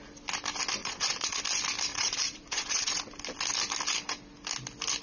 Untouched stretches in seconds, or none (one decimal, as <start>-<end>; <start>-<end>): 0.0-0.8; 1.4-1.9; 3.0-5.0